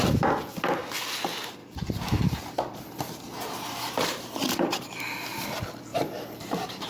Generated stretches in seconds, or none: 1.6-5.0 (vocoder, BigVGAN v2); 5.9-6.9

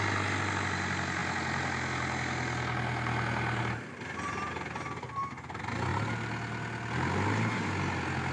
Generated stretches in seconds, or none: none

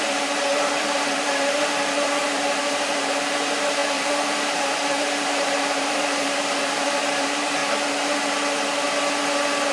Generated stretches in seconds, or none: 0.0-7.6 (vocoder, BigVGAN v2)